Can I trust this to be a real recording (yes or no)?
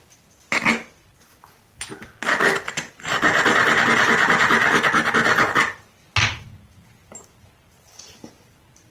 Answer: yes